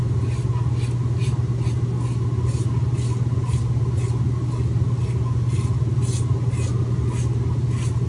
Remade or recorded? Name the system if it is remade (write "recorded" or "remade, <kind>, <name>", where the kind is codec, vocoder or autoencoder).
recorded